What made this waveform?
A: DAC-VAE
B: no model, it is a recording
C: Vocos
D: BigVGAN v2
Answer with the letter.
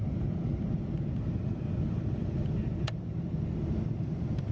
B